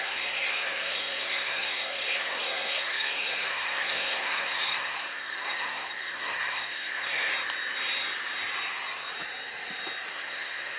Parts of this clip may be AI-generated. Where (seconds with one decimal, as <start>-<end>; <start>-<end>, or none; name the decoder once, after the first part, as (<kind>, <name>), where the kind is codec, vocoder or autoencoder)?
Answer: 0.0-7.3 (codec, SNAC); 10.1-10.8